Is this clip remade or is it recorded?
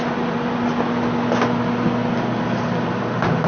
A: recorded